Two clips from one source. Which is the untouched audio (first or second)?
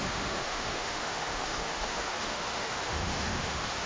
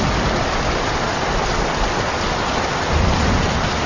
second